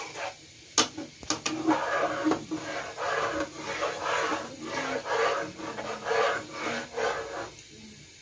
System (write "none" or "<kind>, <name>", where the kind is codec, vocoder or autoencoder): none